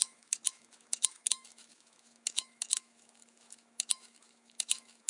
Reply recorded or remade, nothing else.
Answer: remade